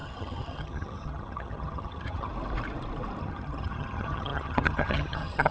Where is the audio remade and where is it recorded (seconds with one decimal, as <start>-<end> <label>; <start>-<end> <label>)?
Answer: 0.0-2.3 remade; 2.3-3.2 recorded; 3.2-5.5 remade